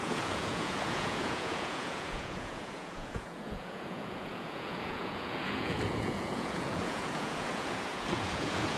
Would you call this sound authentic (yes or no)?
no